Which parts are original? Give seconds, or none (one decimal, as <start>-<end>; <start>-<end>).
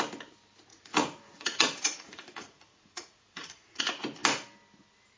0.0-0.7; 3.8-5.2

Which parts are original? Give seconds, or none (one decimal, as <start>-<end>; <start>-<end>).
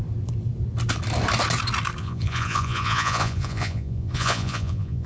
0.0-2.0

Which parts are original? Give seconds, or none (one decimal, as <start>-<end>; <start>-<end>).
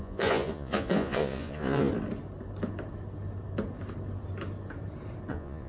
1.9-5.3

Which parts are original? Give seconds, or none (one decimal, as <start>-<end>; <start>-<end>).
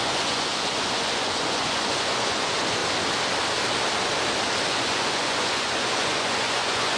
2.8-4.7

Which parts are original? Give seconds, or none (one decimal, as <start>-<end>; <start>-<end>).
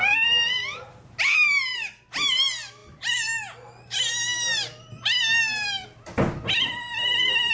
0.0-7.5